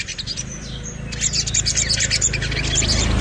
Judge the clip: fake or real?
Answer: real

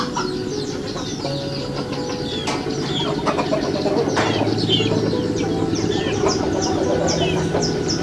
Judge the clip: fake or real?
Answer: real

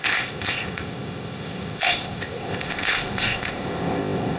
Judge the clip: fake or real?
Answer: fake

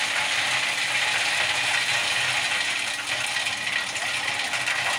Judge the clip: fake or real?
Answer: real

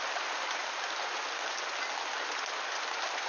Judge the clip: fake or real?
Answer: real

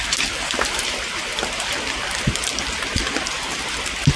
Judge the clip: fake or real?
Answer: real